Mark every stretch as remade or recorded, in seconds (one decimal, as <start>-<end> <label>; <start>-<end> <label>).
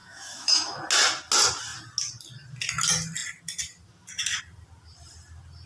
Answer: 0.0-0.8 remade; 0.8-5.7 recorded